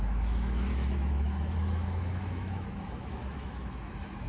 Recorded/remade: remade